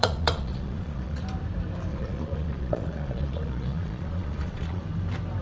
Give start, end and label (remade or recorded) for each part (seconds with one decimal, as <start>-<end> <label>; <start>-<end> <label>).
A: 0.0-1.2 remade; 1.2-1.9 recorded; 1.9-4.8 remade; 4.8-5.4 recorded